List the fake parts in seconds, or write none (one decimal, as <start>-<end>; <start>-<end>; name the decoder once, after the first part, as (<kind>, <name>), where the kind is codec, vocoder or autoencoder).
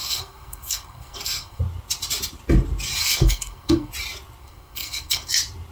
0.0-1.6 (codec, SNAC); 3.0-3.9; 4.4-5.3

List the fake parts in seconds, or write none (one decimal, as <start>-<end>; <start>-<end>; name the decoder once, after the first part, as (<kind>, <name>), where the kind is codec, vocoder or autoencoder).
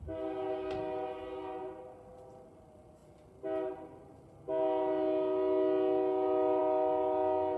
none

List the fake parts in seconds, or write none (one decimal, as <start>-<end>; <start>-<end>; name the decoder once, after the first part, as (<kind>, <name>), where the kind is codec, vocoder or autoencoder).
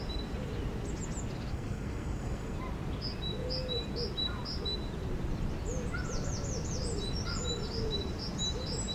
1.5-2.6 (codec, SNAC)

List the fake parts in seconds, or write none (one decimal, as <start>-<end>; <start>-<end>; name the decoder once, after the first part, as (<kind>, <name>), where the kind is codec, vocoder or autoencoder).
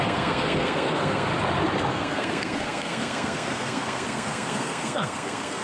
0.0-1.3 (codec, SNAC); 1.9-5.6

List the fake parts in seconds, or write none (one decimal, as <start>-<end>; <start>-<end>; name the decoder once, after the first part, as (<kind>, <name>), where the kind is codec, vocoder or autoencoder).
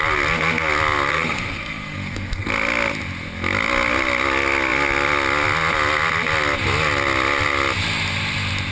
1.1-2.5 (codec, SNAC)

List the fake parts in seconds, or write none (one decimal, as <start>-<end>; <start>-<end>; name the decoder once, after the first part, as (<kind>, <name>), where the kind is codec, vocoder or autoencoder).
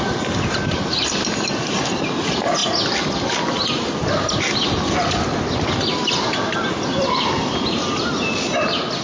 none